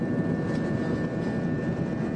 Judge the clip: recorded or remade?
recorded